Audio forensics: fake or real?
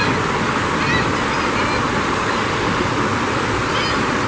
real